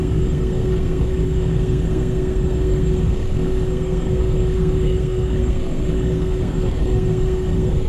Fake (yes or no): yes